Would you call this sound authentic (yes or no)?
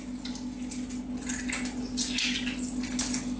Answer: yes